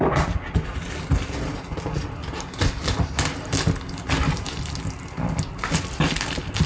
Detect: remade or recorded recorded